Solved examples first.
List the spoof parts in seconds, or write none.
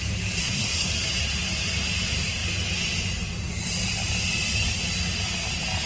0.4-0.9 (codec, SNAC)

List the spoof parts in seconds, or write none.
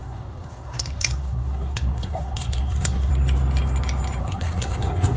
0.0-3.1 (codec, SNAC); 4.2-5.2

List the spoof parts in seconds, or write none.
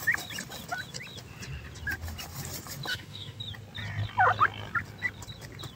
2.9-3.4 (autoencoder, DAC-VAE)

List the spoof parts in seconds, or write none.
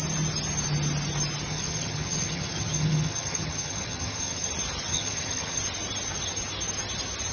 1.5-4.5 (vocoder, HiFi-GAN); 4.9-5.6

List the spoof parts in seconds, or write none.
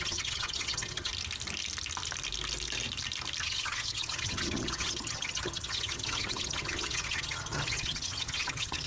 0.0-1.1 (vocoder, HiFi-GAN); 3.4-8.9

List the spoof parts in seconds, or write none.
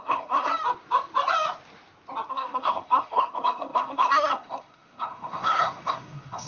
0.0-0.5 (codec, SNAC); 2.3-6.5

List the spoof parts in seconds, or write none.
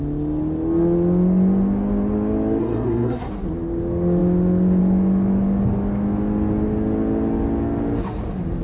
2.6-3.3 (codec, SNAC)